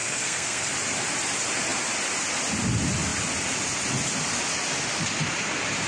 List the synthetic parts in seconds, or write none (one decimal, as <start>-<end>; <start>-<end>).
0.0-0.7